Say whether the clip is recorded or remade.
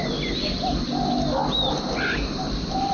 recorded